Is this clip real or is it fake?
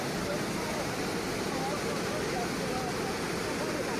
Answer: real